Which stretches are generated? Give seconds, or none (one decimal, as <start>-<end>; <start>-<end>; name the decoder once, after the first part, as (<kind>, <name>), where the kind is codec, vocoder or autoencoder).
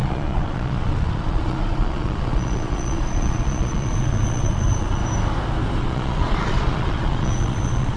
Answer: 0.0-5.0 (vocoder, Vocos); 5.8-8.0